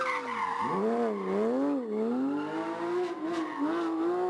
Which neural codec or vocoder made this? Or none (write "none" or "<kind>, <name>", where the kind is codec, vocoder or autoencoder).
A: none